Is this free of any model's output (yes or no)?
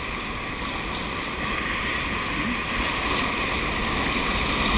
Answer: yes